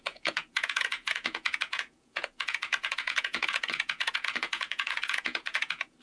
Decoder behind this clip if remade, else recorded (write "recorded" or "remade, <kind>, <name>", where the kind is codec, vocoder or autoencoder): remade, vocoder, Vocos